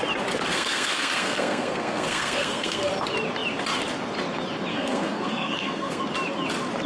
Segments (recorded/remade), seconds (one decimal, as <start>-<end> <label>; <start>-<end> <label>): 0.0-0.5 recorded; 0.5-2.9 remade; 2.9-4.7 recorded; 4.7-6.0 remade; 6.0-6.9 recorded